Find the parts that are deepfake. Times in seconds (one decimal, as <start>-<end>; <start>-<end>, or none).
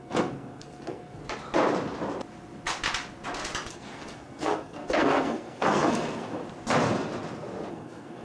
0.0-1.2; 3.7-6.4; 7.7-8.2